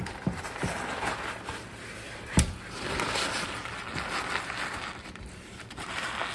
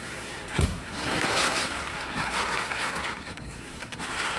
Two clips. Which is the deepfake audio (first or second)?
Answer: second